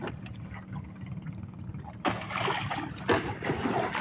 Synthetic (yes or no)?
no